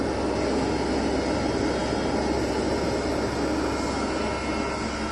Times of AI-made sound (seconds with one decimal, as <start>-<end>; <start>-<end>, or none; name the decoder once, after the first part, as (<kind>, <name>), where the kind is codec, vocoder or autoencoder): none